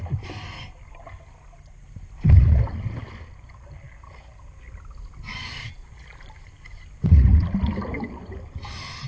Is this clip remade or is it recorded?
recorded